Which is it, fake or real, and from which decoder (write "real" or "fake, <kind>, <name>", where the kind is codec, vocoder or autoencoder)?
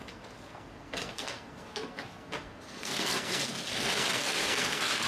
fake, codec, SNAC